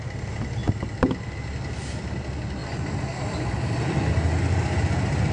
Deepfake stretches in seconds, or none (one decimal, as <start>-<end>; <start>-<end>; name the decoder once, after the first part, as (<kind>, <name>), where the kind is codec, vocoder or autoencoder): 0.0-0.6 (vocoder, BigVGAN v2); 1.4-2.6; 3.2-5.3